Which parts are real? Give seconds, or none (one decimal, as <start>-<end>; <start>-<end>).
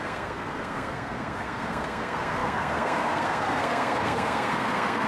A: none